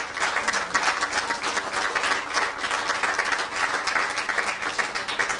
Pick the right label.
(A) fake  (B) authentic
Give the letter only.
B